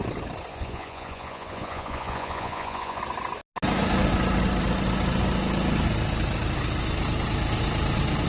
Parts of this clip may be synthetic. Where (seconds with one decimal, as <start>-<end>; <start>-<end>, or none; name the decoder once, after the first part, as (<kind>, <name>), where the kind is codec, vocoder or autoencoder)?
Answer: 0.5-3.0 (vocoder, Vocos)